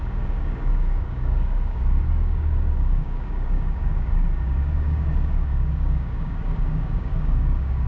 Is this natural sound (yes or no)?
no